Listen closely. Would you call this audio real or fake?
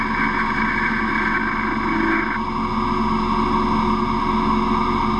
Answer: real